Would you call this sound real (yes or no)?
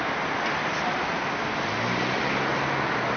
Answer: yes